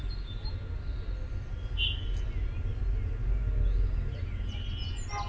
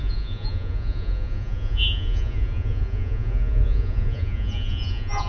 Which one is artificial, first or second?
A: second